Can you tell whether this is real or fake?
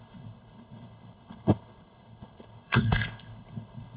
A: fake